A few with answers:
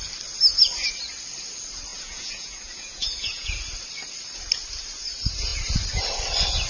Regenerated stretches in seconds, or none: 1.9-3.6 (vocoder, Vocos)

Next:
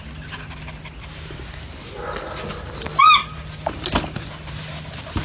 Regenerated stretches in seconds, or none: none